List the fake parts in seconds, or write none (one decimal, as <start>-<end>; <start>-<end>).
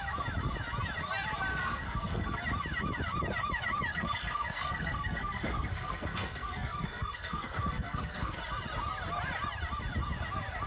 1.5-2.4; 3.9-8.4